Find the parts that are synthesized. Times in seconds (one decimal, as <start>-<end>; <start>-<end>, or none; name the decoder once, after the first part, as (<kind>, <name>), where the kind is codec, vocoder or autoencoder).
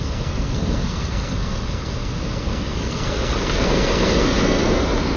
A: 0.0-5.2 (codec, SNAC)